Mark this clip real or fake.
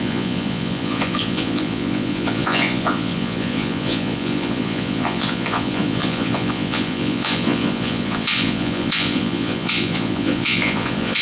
fake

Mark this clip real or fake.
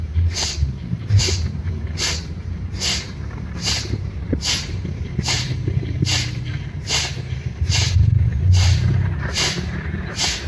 fake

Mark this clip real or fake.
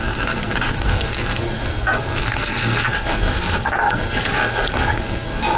fake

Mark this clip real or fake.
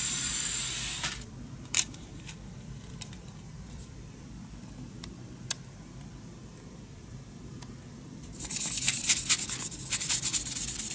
fake